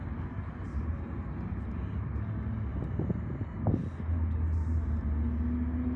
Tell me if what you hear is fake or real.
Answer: real